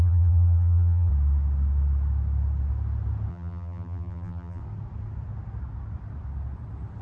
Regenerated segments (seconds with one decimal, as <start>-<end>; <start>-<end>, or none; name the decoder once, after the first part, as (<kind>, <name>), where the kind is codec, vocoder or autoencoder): 0.0-1.1 (vocoder, BigVGAN v2); 3.3-4.6